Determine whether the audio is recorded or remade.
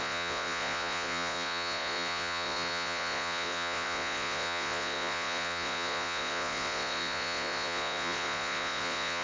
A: remade